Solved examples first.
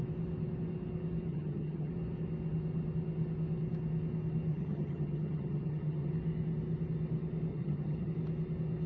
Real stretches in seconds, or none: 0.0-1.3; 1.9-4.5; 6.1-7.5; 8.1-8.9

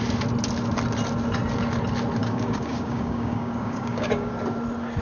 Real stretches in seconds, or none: 0.0-2.2; 4.3-5.0

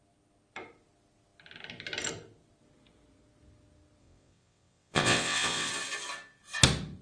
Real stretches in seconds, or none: 0.0-4.0; 5.7-7.0

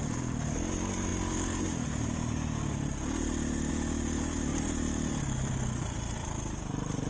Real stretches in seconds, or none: 0.0-4.5

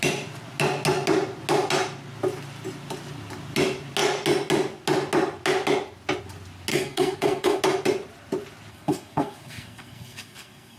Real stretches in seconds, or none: 0.0-6.7; 7.6-8.7

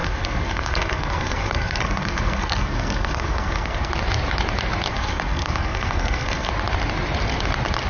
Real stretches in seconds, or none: 3.9-4.9; 6.5-7.9

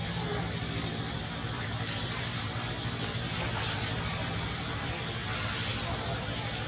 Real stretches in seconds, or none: 0.0-6.7

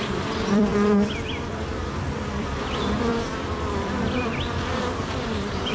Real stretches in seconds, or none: 0.7-1.5; 3.1-5.0